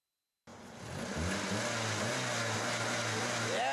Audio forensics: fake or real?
real